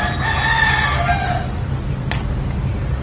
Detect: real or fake real